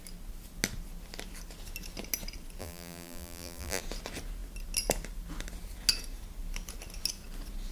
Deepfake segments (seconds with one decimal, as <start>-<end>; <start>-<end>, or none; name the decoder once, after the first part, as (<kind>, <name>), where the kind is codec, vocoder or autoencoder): 2.6-3.8 (vocoder, BigVGAN v2)

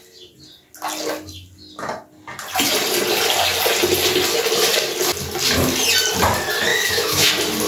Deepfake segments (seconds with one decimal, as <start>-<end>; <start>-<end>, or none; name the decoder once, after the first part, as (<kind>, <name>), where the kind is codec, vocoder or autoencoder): 6.7-7.3 (autoencoder, DAC-VAE)

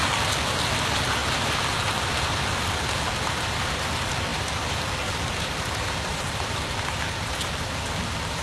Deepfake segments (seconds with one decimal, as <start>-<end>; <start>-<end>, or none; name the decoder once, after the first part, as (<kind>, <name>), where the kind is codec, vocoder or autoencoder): none

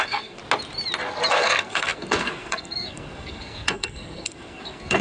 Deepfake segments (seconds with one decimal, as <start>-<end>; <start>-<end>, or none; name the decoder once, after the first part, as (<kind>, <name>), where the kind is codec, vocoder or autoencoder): 0.0-0.4 (codec, SNAC); 1.3-5.0

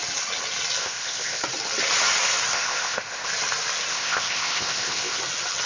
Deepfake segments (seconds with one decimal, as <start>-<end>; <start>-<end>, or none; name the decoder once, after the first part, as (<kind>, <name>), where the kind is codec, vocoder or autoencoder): 0.8-1.4 (codec, ZipCodec); 2.5-3.3; 3.9-5.2